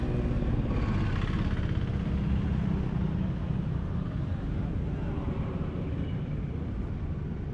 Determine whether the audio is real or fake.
real